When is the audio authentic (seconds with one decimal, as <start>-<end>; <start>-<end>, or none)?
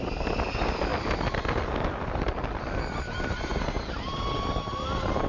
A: 0.0-5.3